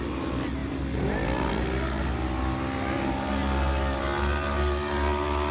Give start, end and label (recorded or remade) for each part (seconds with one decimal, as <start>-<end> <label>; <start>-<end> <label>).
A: 0.0-5.5 recorded